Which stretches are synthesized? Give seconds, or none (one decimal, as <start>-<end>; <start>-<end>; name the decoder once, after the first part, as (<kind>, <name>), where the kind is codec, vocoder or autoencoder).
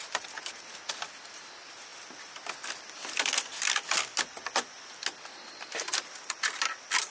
none